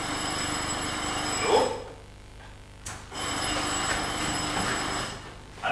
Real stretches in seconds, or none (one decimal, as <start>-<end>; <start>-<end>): 0.0-5.7